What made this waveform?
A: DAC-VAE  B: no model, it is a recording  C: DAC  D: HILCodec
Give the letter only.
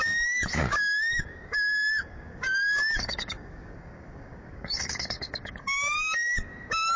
C